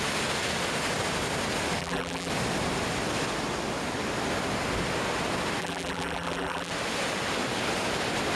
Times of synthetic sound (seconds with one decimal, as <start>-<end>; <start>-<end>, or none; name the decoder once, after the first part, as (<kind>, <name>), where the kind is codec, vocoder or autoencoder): 1.8-2.3 (vocoder, BigVGAN v2); 5.6-6.7